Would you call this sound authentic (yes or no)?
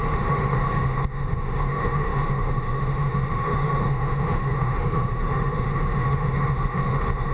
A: no